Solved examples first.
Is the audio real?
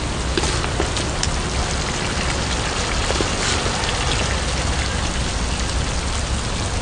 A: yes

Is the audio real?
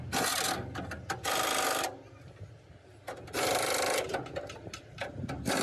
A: yes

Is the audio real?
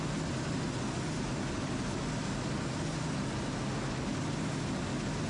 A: yes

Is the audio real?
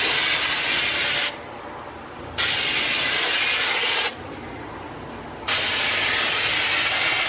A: yes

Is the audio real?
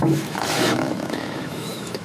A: no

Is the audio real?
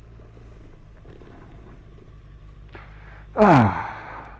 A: yes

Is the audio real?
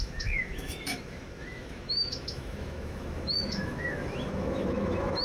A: no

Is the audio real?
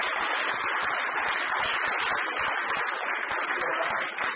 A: yes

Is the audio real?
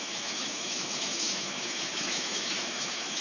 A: no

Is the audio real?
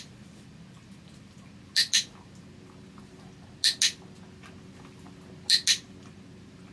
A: yes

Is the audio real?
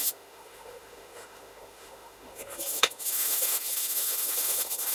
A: no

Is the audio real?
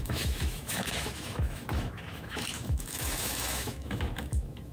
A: no